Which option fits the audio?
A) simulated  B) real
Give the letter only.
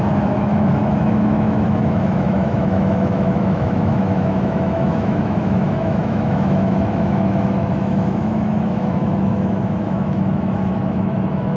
A